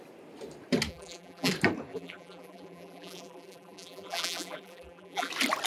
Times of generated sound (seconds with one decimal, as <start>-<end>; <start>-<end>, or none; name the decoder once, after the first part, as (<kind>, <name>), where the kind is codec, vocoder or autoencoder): 0.9-1.5 (vocoder, BigVGAN v2); 1.9-5.3